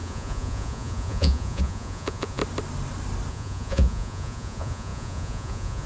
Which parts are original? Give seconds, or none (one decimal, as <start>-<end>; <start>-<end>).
2.4-3.3